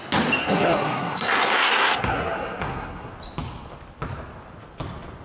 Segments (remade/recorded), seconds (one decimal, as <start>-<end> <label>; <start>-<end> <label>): 0.0-0.4 recorded; 0.4-3.1 remade; 3.1-5.2 recorded